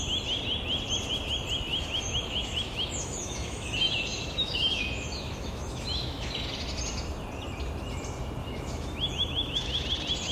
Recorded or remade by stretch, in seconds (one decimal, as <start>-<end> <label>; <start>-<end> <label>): 0.0-1.7 recorded; 1.7-6.3 remade; 6.3-8.4 recorded; 8.4-9.8 remade; 9.8-10.3 recorded